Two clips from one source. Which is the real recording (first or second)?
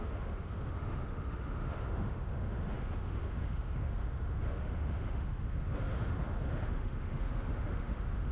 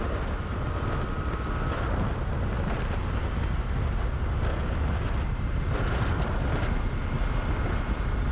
second